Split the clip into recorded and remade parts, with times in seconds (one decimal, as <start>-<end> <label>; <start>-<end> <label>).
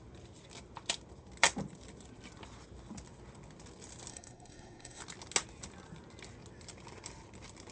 0.0-4.1 recorded; 4.1-5.0 remade; 5.0-7.7 recorded